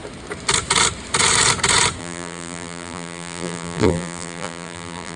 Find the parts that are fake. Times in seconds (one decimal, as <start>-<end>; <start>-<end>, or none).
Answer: 2.0-5.2